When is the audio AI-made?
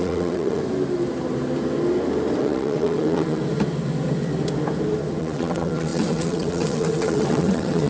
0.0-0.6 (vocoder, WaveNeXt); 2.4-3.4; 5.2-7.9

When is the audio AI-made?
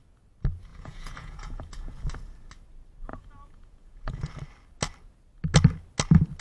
0.7-2.0 (vocoder, Vocos); 3.1-4.3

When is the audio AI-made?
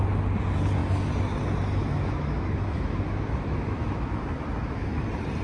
1.8-4.9 (autoencoder, DAC-VAE)